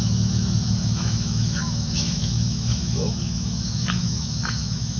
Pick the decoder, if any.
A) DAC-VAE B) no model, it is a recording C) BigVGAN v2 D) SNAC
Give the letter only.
A